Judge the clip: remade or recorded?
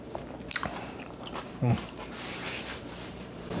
remade